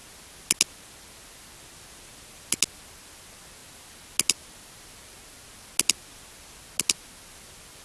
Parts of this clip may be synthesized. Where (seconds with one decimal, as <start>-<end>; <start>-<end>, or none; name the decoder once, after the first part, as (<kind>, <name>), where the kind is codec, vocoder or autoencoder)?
none